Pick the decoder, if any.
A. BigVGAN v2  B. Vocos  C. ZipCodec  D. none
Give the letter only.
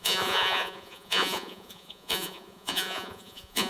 B